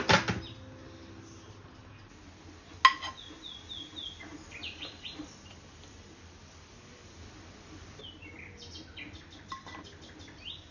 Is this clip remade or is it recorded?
recorded